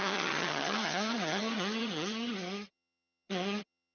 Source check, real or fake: fake